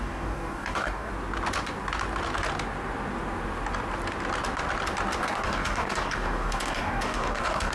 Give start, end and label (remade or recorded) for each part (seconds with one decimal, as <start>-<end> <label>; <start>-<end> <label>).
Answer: 0.0-1.1 remade; 1.1-5.2 recorded; 5.2-7.7 remade